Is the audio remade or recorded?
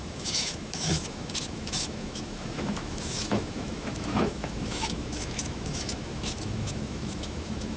remade